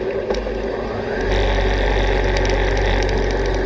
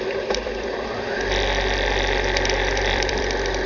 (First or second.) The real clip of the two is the first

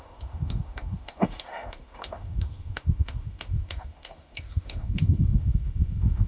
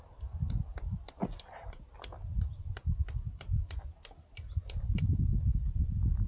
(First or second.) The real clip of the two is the second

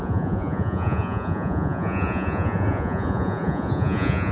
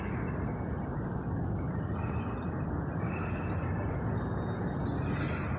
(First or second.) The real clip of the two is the second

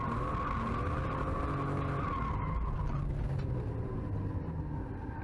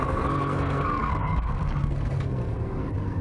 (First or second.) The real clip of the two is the first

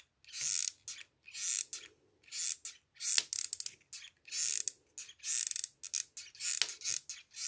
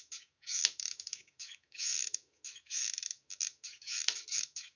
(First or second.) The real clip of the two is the first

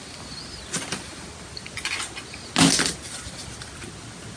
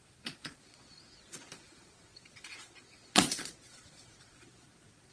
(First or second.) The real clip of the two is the first